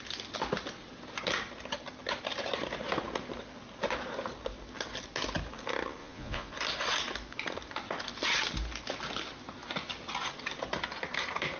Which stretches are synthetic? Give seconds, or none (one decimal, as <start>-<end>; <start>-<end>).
6.0-6.5